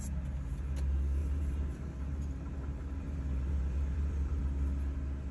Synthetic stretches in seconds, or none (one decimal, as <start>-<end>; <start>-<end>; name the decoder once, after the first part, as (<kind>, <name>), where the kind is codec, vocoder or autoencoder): 1.2-4.4 (vocoder, BigVGAN v2)